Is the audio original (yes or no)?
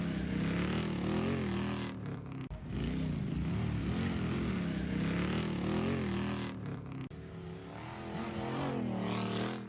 yes